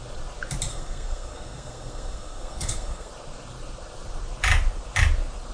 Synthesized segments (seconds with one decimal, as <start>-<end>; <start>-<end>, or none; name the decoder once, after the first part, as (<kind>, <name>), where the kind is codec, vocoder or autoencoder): 0.7-3.1 (codec, SNAC)